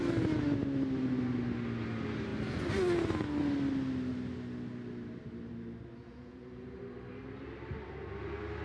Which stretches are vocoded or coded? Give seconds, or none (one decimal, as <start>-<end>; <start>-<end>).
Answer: 6.0-6.8

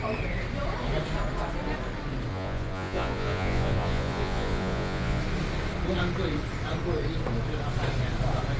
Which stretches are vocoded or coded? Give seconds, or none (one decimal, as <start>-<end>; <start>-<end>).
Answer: 2.3-5.2

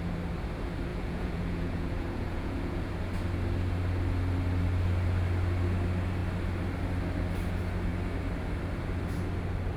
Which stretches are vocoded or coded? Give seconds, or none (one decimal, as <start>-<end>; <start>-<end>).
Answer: 0.9-2.9

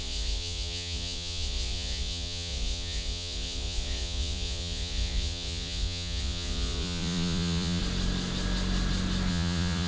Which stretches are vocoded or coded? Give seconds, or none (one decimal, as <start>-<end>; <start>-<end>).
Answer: 0.0-7.8; 9.3-9.9

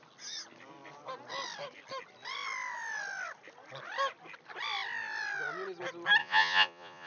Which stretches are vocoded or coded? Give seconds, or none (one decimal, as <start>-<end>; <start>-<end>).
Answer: 6.2-7.1

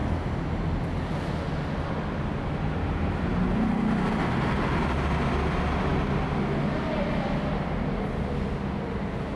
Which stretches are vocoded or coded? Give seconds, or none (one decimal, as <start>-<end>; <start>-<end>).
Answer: none

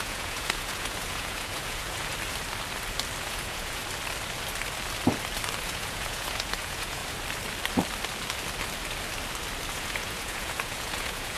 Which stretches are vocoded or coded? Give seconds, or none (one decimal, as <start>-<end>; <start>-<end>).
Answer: 0.0-2.1; 3.2-3.8; 5.6-7.0; 9.7-11.4

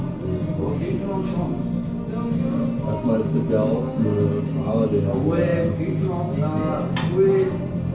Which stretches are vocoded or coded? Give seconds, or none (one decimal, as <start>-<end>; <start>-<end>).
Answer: none